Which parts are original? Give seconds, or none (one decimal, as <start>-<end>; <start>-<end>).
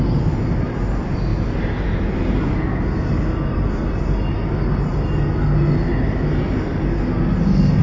0.0-7.8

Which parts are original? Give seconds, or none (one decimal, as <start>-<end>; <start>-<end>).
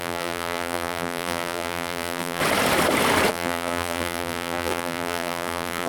2.4-3.3